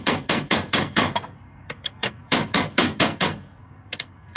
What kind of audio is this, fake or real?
fake